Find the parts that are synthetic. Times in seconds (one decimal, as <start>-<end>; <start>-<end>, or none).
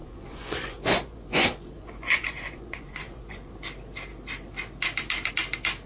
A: 0.0-3.5